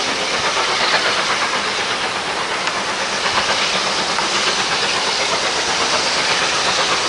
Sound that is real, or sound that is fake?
real